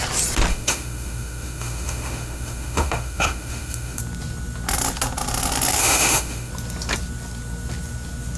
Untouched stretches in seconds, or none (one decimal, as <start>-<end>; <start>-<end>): 0.0-0.5; 4.0-5.8; 6.5-8.4